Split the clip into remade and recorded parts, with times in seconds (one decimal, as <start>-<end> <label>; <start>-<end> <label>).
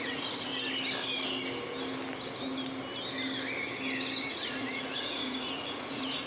0.0-0.5 remade; 0.5-4.3 recorded; 4.3-6.3 remade